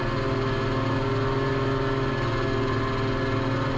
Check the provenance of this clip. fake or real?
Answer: real